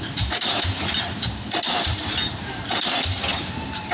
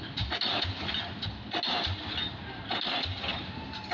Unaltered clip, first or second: second